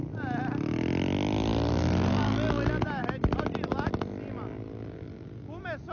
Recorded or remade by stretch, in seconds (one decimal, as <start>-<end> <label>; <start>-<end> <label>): 0.0-3.0 recorded; 3.0-3.7 remade; 3.7-5.9 recorded